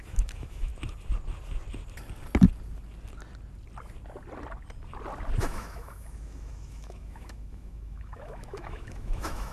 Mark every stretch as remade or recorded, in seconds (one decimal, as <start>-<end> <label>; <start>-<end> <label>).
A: 0.0-0.7 remade; 0.7-5.4 recorded; 5.4-9.5 remade